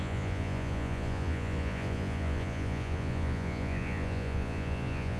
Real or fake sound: fake